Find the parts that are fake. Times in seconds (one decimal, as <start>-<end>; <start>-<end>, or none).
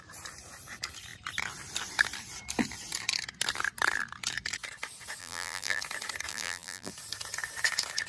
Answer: 5.2-5.8; 6.3-6.9